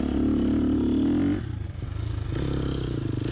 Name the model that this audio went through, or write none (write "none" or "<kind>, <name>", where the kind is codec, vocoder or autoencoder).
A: none